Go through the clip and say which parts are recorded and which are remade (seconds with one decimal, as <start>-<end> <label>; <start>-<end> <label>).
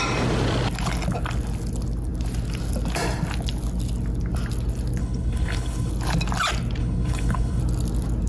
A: 0.0-5.0 recorded; 5.0-5.9 remade; 5.9-6.8 recorded; 6.8-7.6 remade; 7.6-8.3 recorded